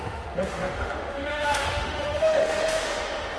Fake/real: fake